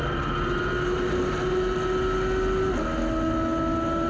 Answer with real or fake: real